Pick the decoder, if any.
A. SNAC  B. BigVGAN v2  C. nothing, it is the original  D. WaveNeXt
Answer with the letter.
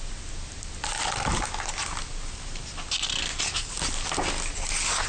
C